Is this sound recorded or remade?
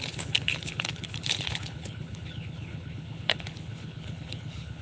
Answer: remade